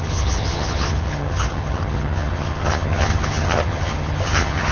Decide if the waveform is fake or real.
fake